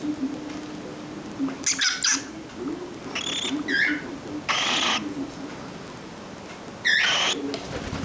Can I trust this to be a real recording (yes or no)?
yes